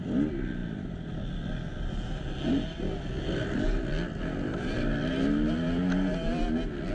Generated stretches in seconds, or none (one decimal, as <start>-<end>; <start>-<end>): none